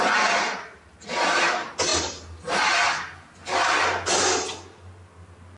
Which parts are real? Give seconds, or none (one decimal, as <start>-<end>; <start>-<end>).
0.0-5.6